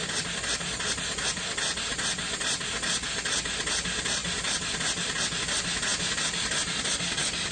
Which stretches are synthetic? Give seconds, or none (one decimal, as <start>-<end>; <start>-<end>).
none